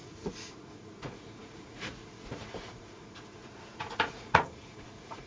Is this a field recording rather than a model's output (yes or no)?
no